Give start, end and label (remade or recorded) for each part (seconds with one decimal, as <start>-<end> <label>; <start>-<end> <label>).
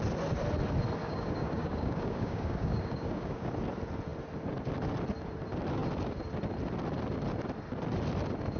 0.0-1.0 recorded; 1.0-3.5 remade; 3.5-8.6 recorded